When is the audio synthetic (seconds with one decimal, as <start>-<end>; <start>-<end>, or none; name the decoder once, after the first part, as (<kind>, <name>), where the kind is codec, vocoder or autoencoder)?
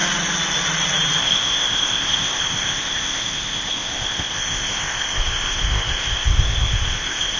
1.2-7.4 (codec, ZipCodec)